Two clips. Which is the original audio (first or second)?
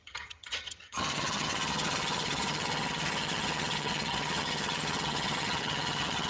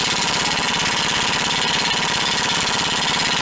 second